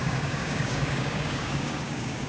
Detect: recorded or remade remade